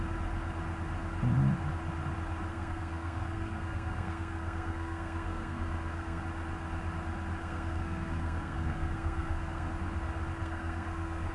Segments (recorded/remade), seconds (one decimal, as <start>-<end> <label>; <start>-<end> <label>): 0.0-2.5 recorded; 2.5-6.2 remade; 6.2-7.4 recorded; 7.4-9.7 remade; 9.7-10.4 recorded; 10.4-11.3 remade